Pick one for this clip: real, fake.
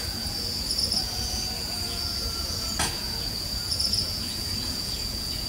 fake